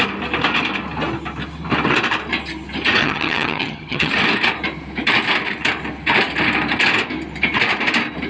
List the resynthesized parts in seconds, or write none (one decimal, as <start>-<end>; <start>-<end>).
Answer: 3.0-4.1